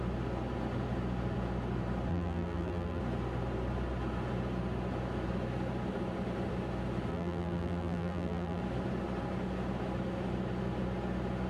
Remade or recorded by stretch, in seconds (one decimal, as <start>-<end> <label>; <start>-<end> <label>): 0.0-2.1 recorded; 2.1-3.0 remade; 3.0-7.1 recorded; 7.1-8.6 remade; 8.6-11.5 recorded